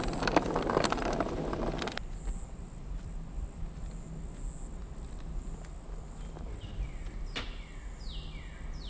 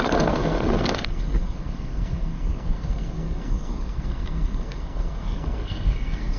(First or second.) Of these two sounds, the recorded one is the first